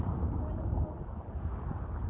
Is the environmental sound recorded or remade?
recorded